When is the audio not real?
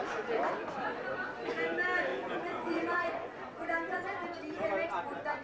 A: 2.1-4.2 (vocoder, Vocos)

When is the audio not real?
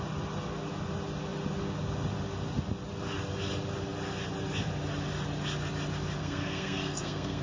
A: 6.2-7.4 (codec, SNAC)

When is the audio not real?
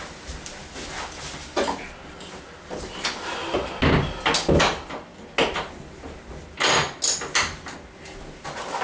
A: none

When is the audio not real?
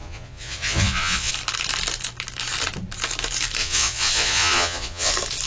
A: 0.0-1.3 (vocoder, Vocos); 3.6-5.1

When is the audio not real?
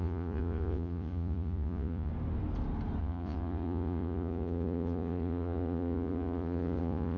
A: 0.0-2.1 (vocoder, Vocos); 3.0-7.2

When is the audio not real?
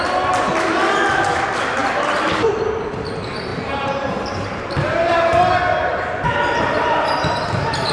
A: 3.5-5.4 (vocoder, BigVGAN v2)